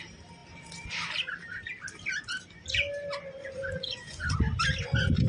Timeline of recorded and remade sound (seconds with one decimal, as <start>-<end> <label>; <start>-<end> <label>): 0.0-3.4 recorded; 3.4-4.4 remade; 4.4-5.3 recorded